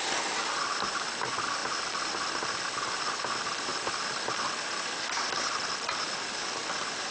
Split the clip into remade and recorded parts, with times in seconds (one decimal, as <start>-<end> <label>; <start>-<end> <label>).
0.0-7.1 recorded